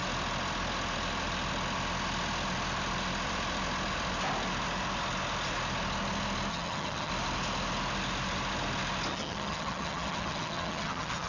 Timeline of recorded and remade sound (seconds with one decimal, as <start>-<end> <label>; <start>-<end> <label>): 0.0-6.5 recorded; 6.5-7.1 remade; 7.1-9.1 recorded; 9.1-11.3 remade